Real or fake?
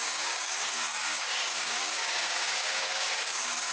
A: fake